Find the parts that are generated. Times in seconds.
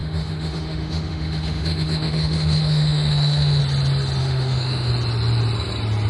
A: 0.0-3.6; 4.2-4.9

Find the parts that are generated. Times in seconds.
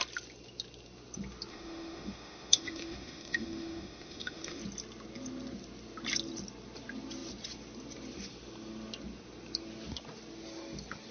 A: 1.5-4.6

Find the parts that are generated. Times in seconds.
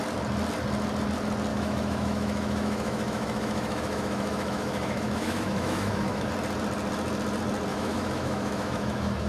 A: 1.5-6.3; 7.7-9.3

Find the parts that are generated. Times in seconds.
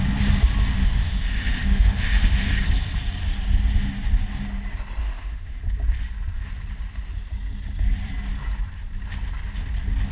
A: 0.7-2.5; 5.0-5.6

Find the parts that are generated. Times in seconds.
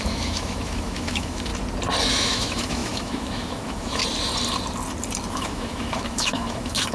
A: 0.0-1.5; 2.1-4.0; 5.3-6.9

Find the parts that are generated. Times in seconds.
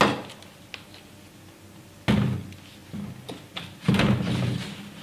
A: none